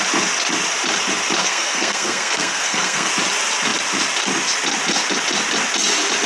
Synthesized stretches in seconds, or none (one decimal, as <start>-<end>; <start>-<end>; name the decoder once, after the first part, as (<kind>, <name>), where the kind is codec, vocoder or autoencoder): 1.4-3.1 (codec, SNAC)